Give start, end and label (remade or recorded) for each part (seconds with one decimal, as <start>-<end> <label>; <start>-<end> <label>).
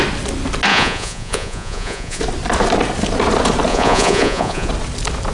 0.0-0.7 recorded; 0.7-2.2 remade; 2.2-3.7 recorded; 3.7-4.7 remade; 4.7-5.3 recorded